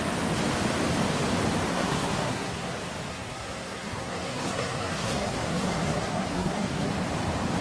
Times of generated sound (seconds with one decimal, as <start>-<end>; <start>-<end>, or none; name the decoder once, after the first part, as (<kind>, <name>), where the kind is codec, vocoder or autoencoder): 1.7-2.7 (codec, SNAC); 3.1-6.9